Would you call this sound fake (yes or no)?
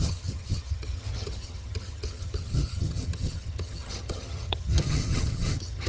yes